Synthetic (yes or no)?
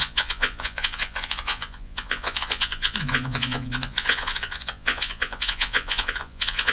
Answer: yes